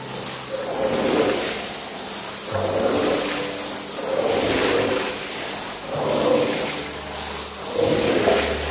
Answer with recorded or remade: recorded